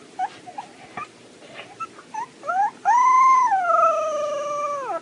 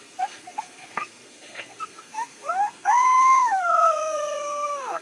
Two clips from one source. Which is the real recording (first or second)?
first